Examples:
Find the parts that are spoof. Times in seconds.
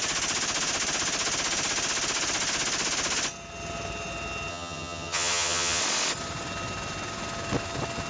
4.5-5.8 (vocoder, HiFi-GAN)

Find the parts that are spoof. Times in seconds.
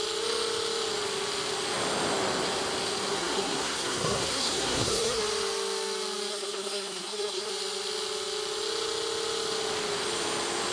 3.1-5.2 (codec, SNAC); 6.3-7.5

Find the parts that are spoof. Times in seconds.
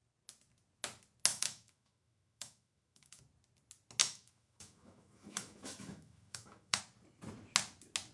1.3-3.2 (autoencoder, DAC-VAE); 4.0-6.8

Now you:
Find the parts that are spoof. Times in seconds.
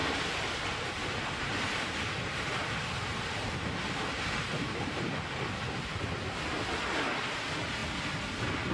0.0-5.2 (vocoder, BigVGAN v2)